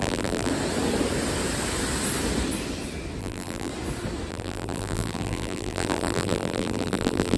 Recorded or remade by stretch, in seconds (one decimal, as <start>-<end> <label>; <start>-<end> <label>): 0.0-0.5 remade; 0.5-3.2 recorded; 3.2-3.7 remade; 3.7-4.3 recorded; 4.3-7.4 remade